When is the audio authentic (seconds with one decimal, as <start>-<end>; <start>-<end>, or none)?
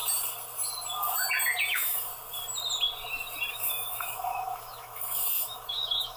0.0-1.7; 2.1-3.5